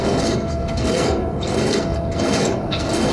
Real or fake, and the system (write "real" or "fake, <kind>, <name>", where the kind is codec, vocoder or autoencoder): fake, codec, SNAC